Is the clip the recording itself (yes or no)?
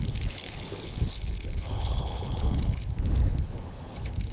no